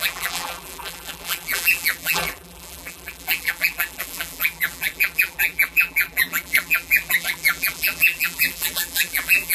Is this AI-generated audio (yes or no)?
yes